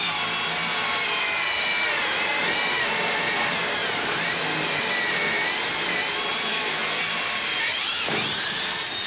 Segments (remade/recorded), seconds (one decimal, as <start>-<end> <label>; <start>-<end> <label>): 0.0-6.5 recorded; 6.5-7.0 remade; 7.0-9.1 recorded